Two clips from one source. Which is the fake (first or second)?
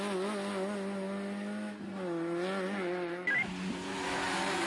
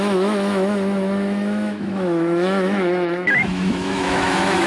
second